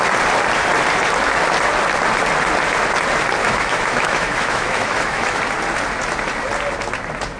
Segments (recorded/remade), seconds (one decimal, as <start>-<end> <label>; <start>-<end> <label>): 0.0-3.4 recorded; 3.4-5.4 remade; 5.4-7.4 recorded

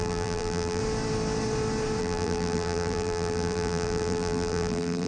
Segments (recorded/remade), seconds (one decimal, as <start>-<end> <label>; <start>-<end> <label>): 0.0-0.8 remade; 0.8-2.0 recorded; 2.0-5.1 remade

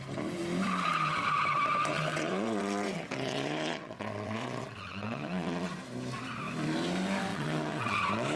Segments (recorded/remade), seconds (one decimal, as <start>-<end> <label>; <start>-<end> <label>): 0.0-1.9 recorded; 1.9-5.7 remade; 5.7-7.3 recorded; 7.3-8.0 remade; 8.0-8.4 recorded

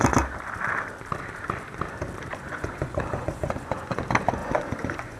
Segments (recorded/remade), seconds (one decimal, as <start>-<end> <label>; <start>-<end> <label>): 0.0-2.3 recorded; 2.3-4.0 remade; 4.0-4.4 recorded; 4.4-5.2 remade